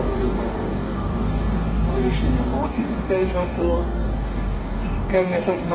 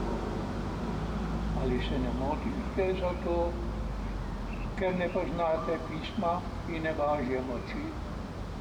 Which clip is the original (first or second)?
second